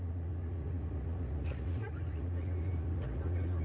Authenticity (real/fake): fake